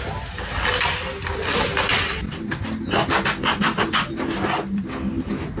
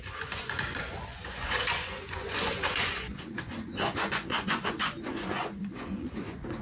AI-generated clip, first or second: second